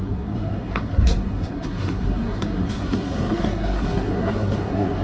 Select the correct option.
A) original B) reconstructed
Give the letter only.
B